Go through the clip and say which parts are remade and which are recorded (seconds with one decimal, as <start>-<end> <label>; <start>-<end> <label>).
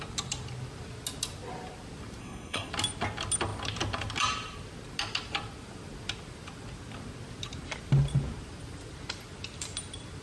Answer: 0.0-2.2 recorded; 2.2-2.7 remade; 2.7-10.2 recorded